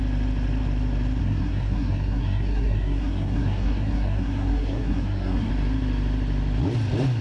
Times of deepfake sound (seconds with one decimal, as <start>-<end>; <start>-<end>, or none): 1.2-5.5